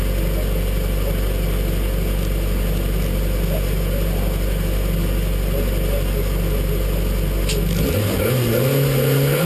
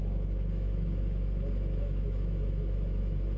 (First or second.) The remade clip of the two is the second